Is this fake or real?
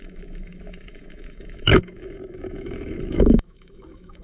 fake